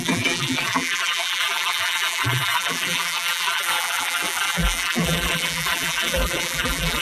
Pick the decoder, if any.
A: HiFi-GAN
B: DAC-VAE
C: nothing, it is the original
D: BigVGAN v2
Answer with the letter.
D